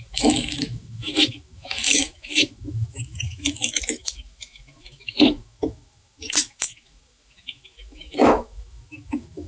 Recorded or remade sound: remade